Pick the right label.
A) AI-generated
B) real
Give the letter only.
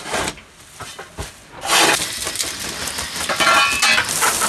B